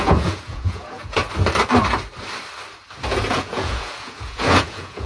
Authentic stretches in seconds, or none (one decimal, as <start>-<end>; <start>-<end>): 1.2-3.3